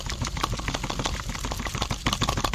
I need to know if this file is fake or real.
real